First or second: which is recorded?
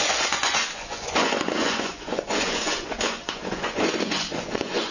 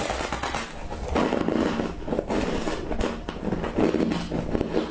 second